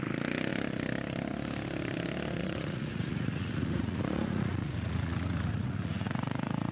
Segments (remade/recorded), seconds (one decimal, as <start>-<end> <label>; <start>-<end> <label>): 0.0-2.4 recorded; 2.4-6.7 remade